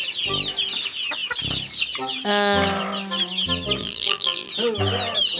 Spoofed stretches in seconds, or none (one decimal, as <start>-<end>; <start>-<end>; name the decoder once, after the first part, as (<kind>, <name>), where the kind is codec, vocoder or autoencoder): 3.8-4.5 (vocoder, BigVGAN v2)